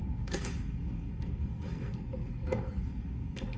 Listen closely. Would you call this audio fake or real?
fake